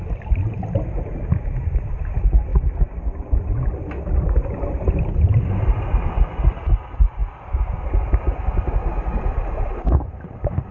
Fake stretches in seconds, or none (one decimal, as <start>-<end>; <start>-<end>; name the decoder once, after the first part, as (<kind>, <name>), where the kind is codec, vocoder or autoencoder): none